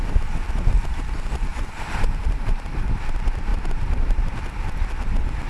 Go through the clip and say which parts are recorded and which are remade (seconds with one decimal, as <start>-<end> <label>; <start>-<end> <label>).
0.0-1.5 recorded; 1.5-3.0 remade; 3.0-3.5 recorded; 3.5-4.3 remade; 4.3-5.5 recorded